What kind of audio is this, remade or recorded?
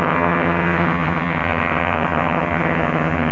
remade